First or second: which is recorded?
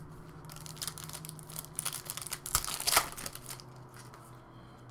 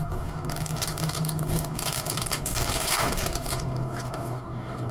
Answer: first